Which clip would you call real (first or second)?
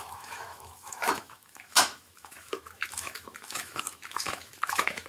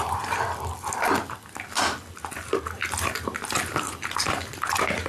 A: second